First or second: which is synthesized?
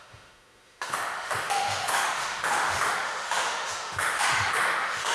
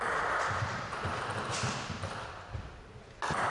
first